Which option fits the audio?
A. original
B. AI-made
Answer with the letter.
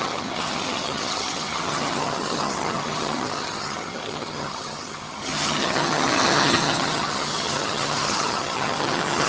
B